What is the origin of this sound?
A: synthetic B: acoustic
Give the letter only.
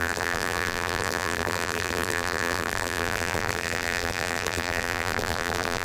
A